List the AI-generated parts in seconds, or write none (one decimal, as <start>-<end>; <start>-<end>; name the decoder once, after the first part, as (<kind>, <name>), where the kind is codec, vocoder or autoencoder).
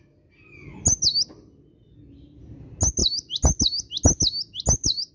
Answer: none